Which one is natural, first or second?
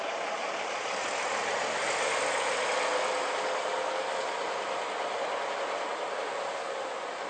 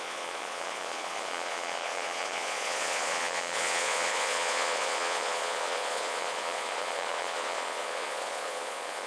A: first